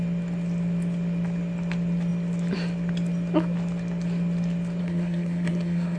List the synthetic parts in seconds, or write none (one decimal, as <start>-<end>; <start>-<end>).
4.8-6.0